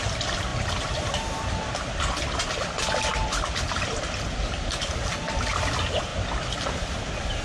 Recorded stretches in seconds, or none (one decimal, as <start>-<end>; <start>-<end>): 0.0-0.5; 2.0-3.2; 4.8-7.4